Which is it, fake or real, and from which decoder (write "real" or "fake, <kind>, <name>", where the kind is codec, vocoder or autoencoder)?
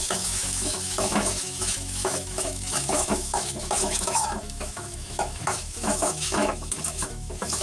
fake, autoencoder, DAC-VAE